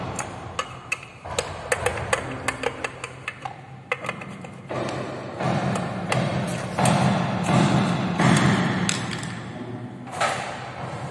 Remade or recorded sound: recorded